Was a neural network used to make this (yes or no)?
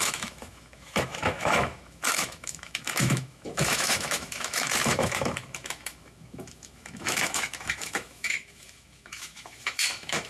yes